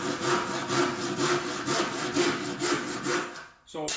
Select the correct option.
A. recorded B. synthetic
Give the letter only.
A